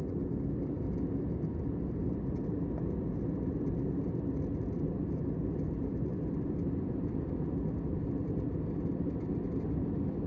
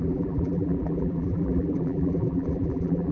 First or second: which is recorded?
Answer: first